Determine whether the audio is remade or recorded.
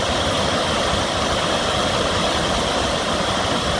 recorded